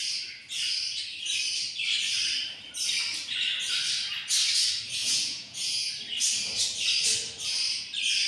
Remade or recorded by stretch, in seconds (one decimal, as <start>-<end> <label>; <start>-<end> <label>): 0.0-5.0 recorded; 5.0-5.9 remade; 5.9-8.3 recorded